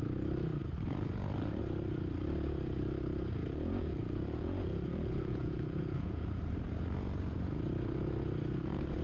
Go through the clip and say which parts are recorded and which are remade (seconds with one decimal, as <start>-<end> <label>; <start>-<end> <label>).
0.0-3.4 recorded; 3.4-6.4 remade; 6.4-9.0 recorded